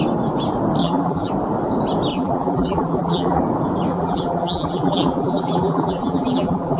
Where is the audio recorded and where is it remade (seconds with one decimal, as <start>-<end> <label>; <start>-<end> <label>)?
0.0-0.8 recorded; 0.8-1.3 remade; 1.3-2.1 recorded; 2.1-3.4 remade; 3.4-3.9 recorded; 3.9-6.8 remade